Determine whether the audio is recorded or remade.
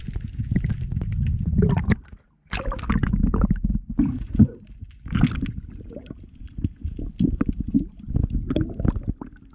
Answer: recorded